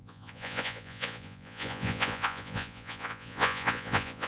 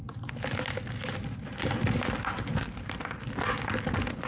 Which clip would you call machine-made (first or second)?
first